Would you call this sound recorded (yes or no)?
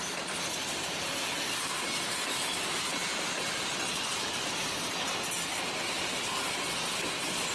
yes